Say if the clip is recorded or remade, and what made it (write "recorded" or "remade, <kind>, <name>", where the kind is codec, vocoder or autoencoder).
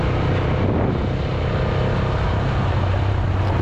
recorded